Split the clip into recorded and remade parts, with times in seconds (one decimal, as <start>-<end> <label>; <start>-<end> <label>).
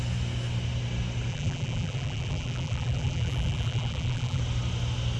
0.0-1.3 recorded; 1.3-4.4 remade; 4.4-5.2 recorded